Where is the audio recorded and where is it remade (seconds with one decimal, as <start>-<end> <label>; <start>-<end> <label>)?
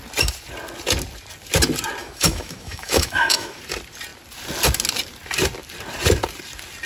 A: 0.0-2.0 recorded; 2.0-3.6 remade; 3.6-6.9 recorded